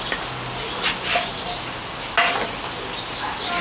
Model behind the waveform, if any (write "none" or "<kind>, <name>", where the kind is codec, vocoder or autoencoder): none